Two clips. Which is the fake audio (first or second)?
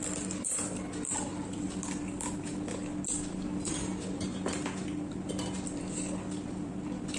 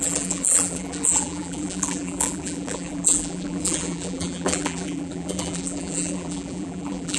second